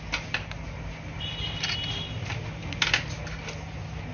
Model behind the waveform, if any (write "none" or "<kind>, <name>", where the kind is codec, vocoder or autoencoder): none